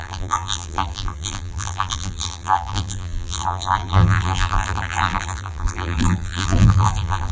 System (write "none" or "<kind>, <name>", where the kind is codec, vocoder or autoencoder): vocoder, BigVGAN v2